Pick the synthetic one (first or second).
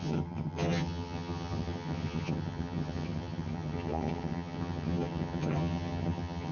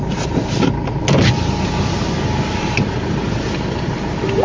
first